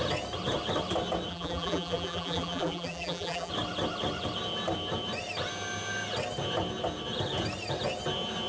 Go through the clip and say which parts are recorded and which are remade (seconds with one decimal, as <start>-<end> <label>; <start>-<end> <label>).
0.0-1.3 recorded; 1.3-3.5 remade; 3.5-8.5 recorded